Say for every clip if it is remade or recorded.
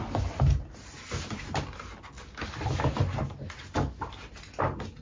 recorded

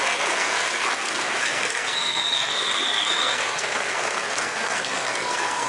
remade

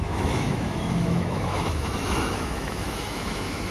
remade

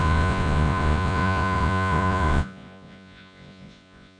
remade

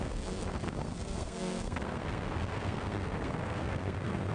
remade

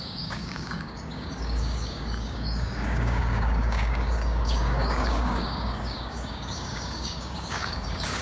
remade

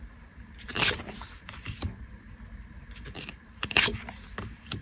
remade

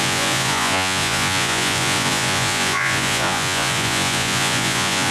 remade